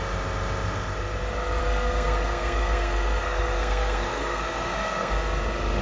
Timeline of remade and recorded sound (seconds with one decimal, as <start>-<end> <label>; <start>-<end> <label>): 0.0-1.6 recorded; 1.6-5.1 remade; 5.1-5.8 recorded

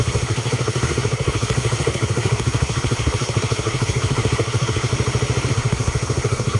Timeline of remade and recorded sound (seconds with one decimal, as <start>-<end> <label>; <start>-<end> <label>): 0.0-4.9 remade; 4.9-5.5 recorded; 5.5-6.6 remade

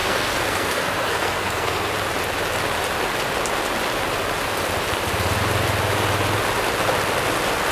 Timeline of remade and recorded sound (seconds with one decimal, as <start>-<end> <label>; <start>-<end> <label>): 0.0-1.9 remade; 1.9-7.7 recorded

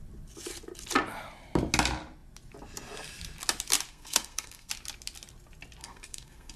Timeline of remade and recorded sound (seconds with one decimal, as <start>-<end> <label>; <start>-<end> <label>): 0.0-3.9 recorded; 3.9-4.7 remade; 4.7-5.8 recorded; 5.8-6.6 remade

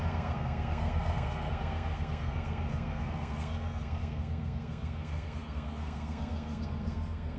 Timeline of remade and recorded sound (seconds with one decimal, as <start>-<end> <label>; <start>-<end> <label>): 0.0-7.4 remade